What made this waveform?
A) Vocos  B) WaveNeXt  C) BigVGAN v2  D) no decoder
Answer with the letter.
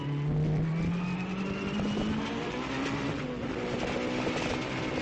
D